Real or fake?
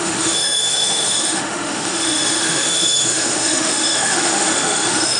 fake